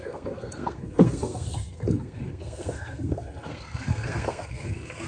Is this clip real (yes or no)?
no